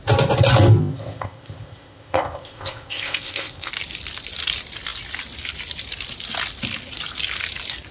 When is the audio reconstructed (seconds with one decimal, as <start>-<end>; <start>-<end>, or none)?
0.8-3.7